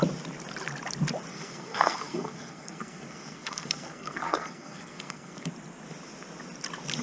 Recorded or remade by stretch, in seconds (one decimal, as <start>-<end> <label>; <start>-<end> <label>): 0.0-1.3 recorded; 1.3-5.5 remade; 5.5-7.0 recorded